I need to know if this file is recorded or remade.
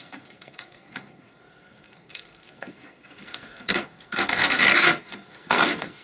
remade